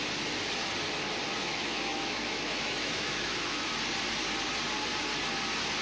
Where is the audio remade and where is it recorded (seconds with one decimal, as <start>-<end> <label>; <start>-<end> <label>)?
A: 0.0-1.4 recorded; 1.4-3.7 remade; 3.7-5.8 recorded